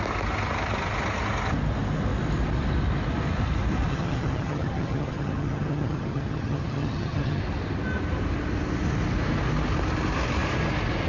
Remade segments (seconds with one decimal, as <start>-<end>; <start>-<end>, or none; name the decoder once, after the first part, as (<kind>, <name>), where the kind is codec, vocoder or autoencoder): 3.9-7.4 (vocoder, HiFi-GAN)